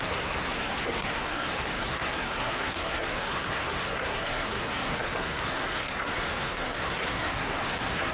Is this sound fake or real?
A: fake